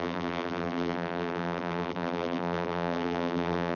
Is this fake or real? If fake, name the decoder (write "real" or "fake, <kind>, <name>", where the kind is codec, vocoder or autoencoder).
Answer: fake, vocoder, BigVGAN v2